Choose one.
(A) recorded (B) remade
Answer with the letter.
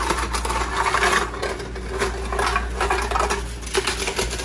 A